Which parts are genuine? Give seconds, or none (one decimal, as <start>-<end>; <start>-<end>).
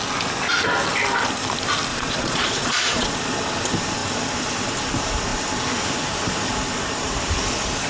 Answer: 0.0-1.9; 3.1-7.9